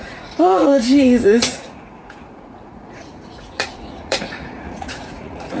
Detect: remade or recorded remade